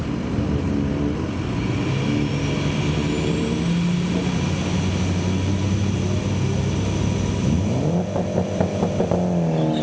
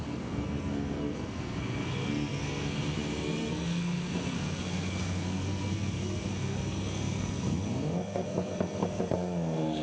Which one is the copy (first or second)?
second